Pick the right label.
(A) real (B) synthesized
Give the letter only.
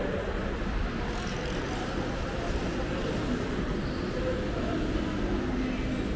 A